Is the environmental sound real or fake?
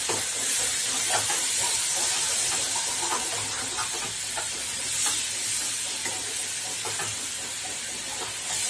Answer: real